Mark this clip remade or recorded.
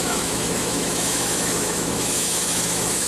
remade